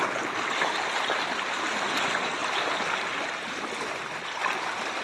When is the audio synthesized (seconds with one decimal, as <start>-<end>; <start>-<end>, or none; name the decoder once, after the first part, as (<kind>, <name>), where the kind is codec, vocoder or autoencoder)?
none